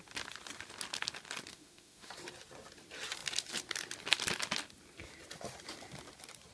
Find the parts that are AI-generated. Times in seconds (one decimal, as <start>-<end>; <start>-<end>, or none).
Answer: 1.5-2.1